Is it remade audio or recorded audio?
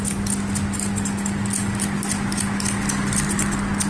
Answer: recorded